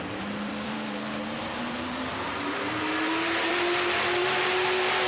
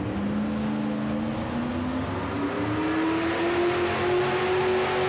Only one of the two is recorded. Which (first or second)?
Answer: second